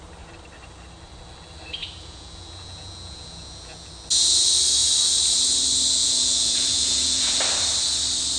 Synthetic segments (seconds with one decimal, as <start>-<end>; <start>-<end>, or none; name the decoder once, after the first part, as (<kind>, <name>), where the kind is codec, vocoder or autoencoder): 1.8-3.9 (vocoder, Vocos); 6.0-7.4